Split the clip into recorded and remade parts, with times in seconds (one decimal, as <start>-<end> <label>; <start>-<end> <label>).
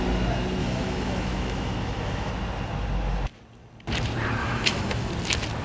0.0-0.6 recorded; 0.6-2.3 remade; 2.3-4.4 recorded; 4.4-5.1 remade; 5.1-5.6 recorded